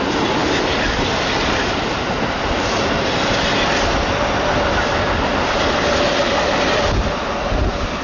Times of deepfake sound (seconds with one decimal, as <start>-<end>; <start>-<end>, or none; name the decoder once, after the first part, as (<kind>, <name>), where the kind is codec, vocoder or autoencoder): 0.4-2.6 (vocoder, BigVGAN v2)